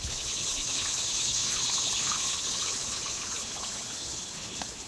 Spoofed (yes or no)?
yes